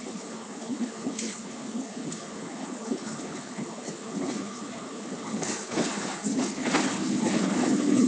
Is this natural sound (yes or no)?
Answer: no